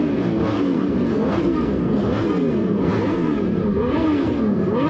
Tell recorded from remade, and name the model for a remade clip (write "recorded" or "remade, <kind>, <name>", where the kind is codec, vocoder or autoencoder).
remade, codec, SNAC